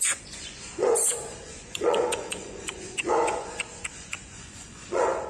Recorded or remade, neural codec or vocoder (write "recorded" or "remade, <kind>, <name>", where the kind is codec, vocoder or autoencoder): remade, vocoder, Vocos